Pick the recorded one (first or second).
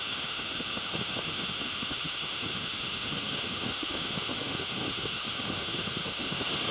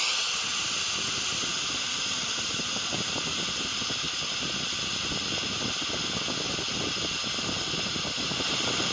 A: second